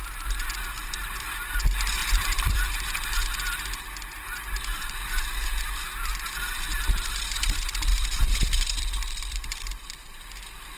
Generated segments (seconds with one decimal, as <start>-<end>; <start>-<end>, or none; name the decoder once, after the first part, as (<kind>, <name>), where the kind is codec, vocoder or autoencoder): 2.0-3.8 (vocoder, BigVGAN v2); 7.9-9.4